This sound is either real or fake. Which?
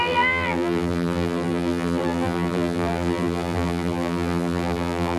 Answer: fake